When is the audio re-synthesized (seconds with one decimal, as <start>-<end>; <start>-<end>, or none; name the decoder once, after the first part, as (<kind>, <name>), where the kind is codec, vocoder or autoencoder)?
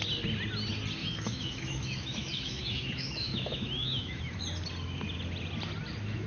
1.0-4.4 (autoencoder, DAC-VAE)